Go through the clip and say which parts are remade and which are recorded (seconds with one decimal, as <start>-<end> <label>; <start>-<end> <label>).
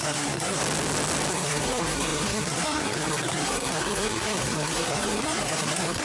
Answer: 0.0-0.6 remade; 0.6-1.3 recorded; 1.3-6.0 remade